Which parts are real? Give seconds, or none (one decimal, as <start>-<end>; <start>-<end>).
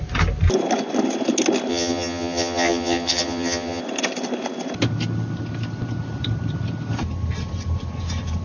0.0-1.7; 3.8-8.4